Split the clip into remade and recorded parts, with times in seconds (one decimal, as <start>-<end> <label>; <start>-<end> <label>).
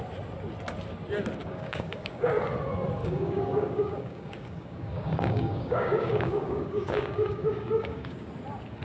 0.0-1.4 recorded; 1.4-2.3 remade; 2.3-3.0 recorded; 3.0-8.3 remade; 8.3-8.8 recorded